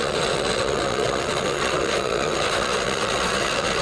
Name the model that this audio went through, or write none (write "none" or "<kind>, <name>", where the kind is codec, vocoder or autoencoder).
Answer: vocoder, WaveNeXt